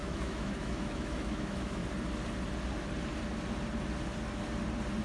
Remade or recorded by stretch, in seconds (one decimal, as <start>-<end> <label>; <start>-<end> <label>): 0.0-1.8 remade; 1.8-5.0 recorded

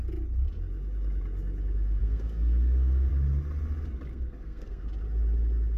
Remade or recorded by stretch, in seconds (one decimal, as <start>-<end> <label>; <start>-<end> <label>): 0.0-2.0 recorded; 2.0-3.1 remade; 3.1-4.1 recorded; 4.1-4.8 remade; 4.8-5.8 recorded

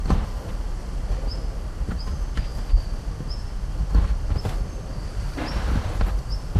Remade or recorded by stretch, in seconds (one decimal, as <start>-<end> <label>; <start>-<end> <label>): 0.0-1.3 recorded; 1.3-1.9 remade; 1.9-6.6 recorded

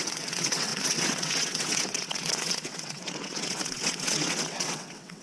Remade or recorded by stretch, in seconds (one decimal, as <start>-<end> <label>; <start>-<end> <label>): 0.0-5.2 remade

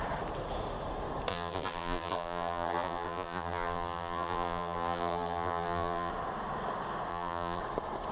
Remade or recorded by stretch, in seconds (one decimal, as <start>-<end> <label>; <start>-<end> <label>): 0.0-1.3 recorded; 1.3-6.1 remade; 6.1-7.1 recorded; 7.1-7.6 remade; 7.6-8.1 recorded